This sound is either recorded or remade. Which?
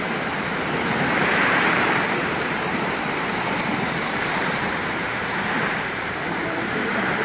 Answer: remade